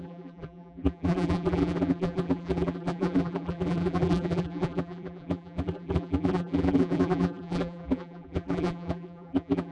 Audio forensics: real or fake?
fake